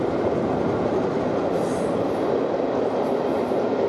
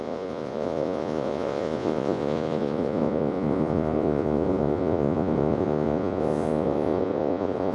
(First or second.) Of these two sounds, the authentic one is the first